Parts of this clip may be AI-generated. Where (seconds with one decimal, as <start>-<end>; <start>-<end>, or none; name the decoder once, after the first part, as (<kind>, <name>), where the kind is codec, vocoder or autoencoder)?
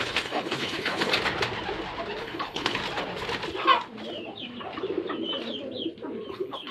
0.0-1.1 (codec, HILCodec); 2.2-2.8; 6.3-6.7